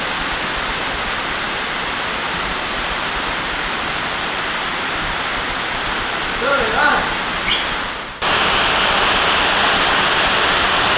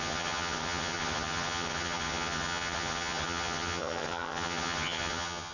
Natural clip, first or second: first